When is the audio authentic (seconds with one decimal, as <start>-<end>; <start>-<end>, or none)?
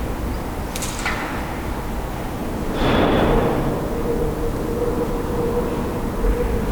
0.0-6.7